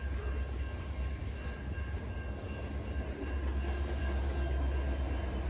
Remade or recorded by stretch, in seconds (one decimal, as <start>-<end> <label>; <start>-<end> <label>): 0.0-5.5 recorded